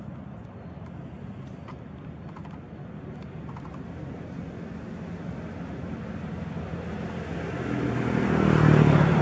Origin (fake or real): real